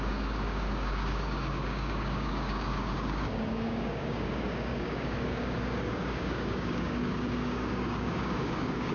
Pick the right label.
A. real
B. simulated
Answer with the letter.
B